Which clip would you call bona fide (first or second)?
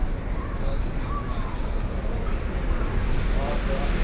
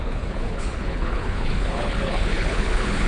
first